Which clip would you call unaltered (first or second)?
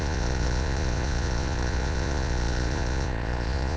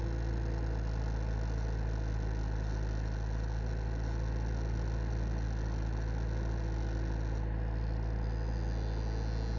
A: second